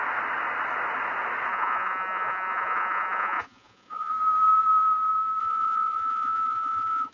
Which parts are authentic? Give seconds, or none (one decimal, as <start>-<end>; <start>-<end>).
0.0-1.5; 4.1-5.4